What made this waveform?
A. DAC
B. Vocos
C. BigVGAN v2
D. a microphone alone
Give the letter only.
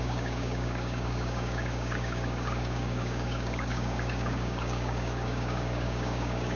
A